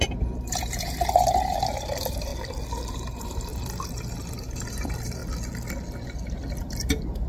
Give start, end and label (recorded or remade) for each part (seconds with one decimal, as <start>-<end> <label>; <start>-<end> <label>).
0.0-2.3 remade; 2.3-2.9 recorded; 2.9-3.5 remade; 3.5-4.3 recorded; 4.3-5.2 remade; 5.2-6.6 recorded; 6.6-7.3 remade